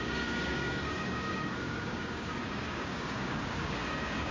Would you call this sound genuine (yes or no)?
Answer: no